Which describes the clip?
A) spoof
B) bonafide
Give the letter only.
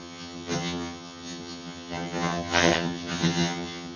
A